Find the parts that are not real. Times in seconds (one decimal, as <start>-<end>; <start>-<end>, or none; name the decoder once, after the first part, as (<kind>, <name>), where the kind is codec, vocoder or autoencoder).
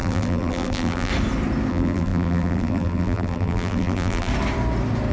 0.0-1.1 (vocoder, BigVGAN v2); 1.7-4.3